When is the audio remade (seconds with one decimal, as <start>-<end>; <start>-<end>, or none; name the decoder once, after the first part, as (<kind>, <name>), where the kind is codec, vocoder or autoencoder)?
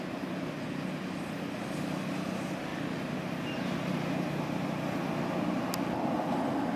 none